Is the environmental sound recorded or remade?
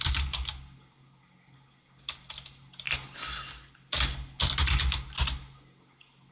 recorded